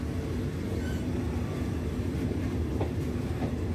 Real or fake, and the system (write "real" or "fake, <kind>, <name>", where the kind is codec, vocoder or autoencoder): real